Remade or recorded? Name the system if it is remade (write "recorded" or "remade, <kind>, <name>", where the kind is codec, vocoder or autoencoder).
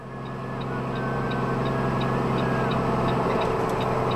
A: recorded